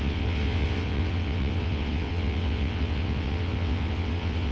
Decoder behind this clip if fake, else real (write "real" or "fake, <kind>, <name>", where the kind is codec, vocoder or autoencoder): fake, vocoder, WaveNeXt